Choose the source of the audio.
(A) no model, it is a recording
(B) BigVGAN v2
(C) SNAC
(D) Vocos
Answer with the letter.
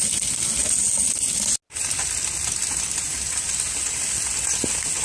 A